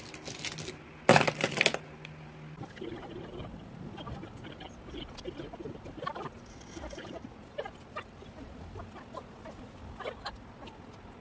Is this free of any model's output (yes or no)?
yes